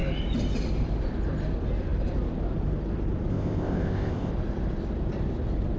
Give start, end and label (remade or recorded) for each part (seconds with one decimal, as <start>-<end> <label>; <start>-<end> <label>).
0.0-3.3 recorded; 3.3-4.3 remade; 4.3-5.8 recorded